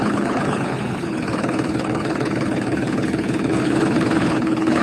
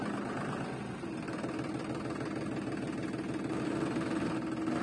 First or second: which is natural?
second